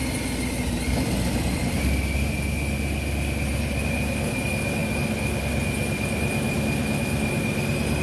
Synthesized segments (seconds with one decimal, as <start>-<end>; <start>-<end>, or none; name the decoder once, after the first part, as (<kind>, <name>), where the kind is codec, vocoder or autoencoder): none